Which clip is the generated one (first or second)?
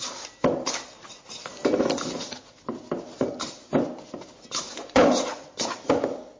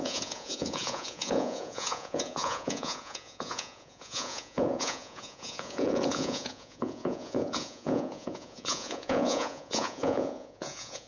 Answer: second